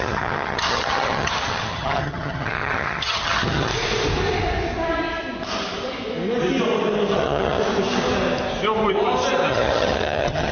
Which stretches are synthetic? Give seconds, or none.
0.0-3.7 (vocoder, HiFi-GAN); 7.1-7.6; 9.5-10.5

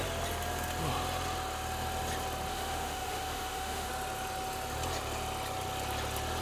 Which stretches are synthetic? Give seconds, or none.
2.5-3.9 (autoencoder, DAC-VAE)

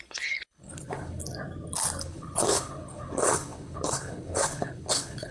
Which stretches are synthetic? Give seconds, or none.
0.0-1.2 (codec, HILCodec); 2.0-5.3

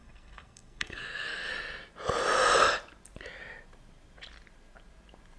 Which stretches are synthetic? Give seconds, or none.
0.0-1.5 (codec, SNAC)

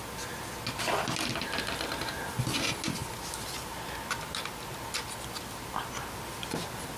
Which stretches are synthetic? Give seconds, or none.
none

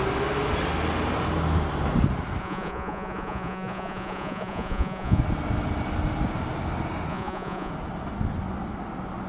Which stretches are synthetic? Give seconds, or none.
2.4-5.2 (vocoder, Vocos); 7.1-7.7

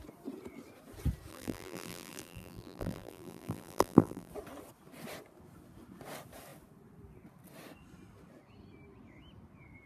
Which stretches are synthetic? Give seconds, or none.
1.3-4.3 (vocoder, BigVGAN v2)

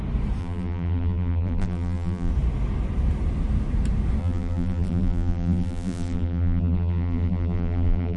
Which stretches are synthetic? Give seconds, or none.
0.4-2.3 (vocoder, BigVGAN v2); 4.2-8.2